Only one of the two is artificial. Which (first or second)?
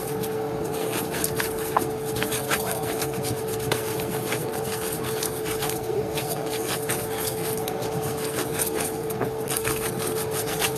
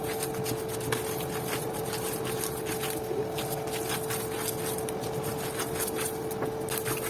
first